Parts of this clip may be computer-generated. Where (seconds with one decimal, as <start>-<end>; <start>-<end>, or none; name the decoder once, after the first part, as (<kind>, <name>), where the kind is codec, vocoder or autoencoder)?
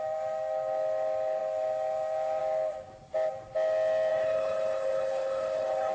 4.1-5.9 (codec, HILCodec)